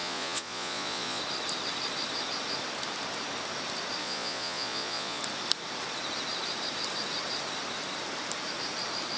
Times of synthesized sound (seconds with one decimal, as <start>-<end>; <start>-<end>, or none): 0.0-1.2; 4.0-5.2